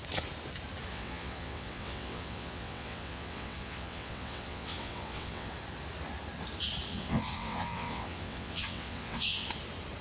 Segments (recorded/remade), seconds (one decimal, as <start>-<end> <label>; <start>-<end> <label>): 0.0-0.9 recorded; 0.9-5.5 remade; 5.5-6.9 recorded; 6.9-9.5 remade; 9.5-10.0 recorded